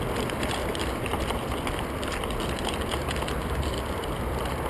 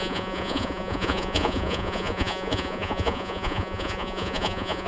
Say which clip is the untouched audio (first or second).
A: first